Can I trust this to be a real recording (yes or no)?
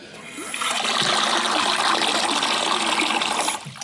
yes